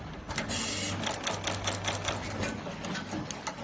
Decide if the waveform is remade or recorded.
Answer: recorded